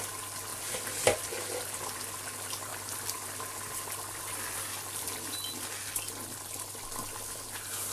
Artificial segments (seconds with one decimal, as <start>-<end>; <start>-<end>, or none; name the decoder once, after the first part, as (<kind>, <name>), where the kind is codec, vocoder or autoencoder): none